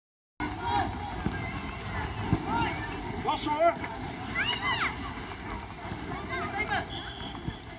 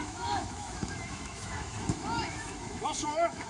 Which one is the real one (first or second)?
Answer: first